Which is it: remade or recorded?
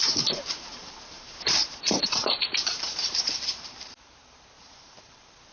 remade